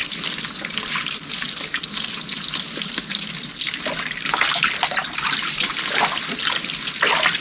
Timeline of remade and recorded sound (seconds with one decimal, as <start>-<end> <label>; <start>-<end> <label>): 0.0-7.4 recorded